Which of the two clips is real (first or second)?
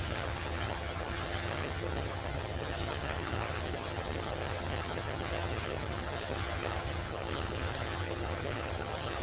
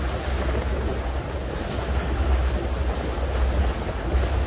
second